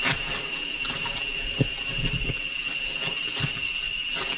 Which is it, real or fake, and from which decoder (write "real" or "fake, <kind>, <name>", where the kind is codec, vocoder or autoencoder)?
real